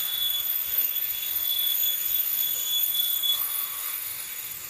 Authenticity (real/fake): fake